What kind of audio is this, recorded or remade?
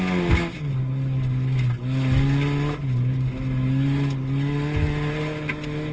recorded